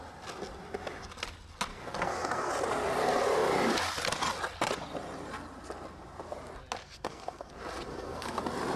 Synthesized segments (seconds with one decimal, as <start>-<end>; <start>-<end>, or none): 1.7-2.5; 6.8-7.5; 7.9-8.4